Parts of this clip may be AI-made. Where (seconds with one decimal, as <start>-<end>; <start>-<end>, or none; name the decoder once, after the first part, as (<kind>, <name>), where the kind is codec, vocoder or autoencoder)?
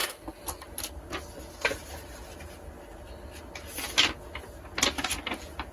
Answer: none